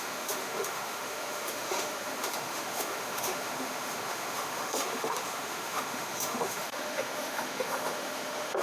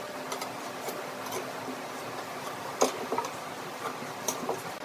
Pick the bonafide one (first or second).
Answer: second